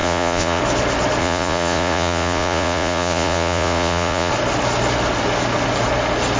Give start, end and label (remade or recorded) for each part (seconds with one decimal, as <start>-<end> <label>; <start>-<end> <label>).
0.0-0.6 remade; 0.6-1.2 recorded; 1.2-4.3 remade; 4.3-6.4 recorded

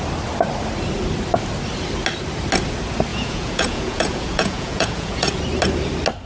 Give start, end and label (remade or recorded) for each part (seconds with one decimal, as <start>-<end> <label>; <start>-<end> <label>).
0.0-3.1 recorded; 3.1-5.4 remade; 5.4-6.3 recorded